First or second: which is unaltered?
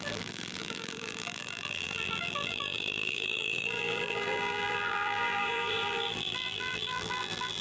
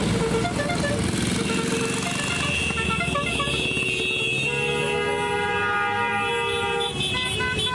second